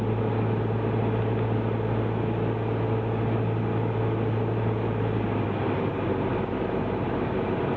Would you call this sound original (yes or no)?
yes